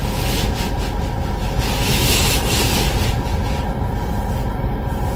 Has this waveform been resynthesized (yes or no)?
no